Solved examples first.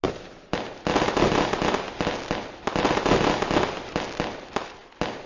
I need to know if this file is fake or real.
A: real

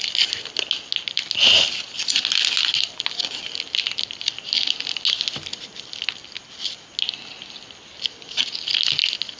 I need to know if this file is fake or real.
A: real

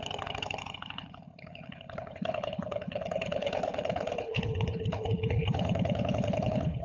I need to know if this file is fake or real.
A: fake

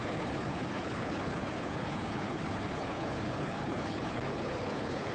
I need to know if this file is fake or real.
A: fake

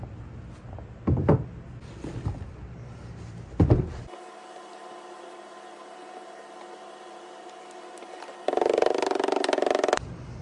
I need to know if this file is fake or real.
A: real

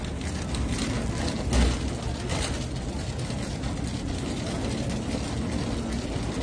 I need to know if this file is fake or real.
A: real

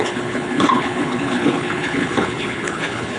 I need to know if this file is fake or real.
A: fake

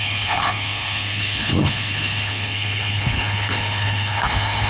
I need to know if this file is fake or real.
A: fake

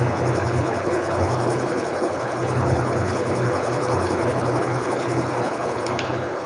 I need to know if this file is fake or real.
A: fake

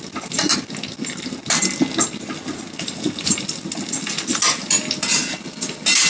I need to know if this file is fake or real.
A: real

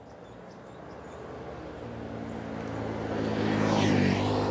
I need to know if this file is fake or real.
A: real